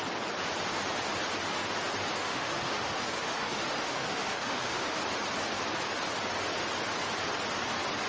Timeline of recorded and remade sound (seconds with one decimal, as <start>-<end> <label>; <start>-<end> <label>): 0.0-2.2 recorded; 2.2-5.0 remade; 5.0-8.1 recorded